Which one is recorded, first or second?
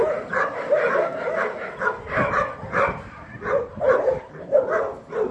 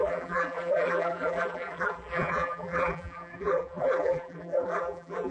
first